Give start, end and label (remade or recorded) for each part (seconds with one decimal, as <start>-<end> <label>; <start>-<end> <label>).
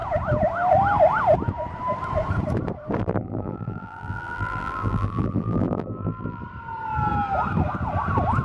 0.0-3.0 recorded; 3.0-6.4 remade; 6.4-8.4 recorded